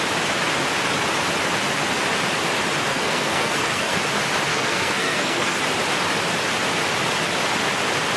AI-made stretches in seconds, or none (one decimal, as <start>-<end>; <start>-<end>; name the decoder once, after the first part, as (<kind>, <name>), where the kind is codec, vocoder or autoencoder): 2.9-4.0 (codec, SNAC); 4.5-5.6